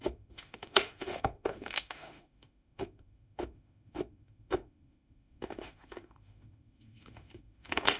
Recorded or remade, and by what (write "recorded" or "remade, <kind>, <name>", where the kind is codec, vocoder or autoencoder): remade, autoencoder, DAC-VAE